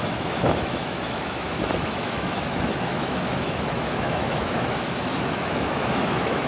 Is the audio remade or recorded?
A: remade